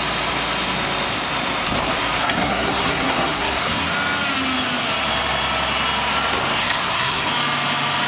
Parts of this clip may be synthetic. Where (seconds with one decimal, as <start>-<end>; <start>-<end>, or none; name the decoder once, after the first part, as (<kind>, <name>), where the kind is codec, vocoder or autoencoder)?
2.2-3.8 (codec, SNAC); 6.6-7.3